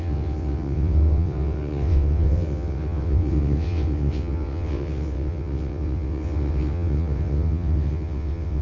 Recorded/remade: remade